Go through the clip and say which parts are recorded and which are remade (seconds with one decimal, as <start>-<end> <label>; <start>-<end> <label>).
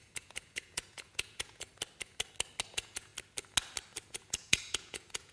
0.0-1.7 remade; 1.7-2.7 recorded; 2.7-3.1 remade; 3.1-4.1 recorded; 4.1-5.3 remade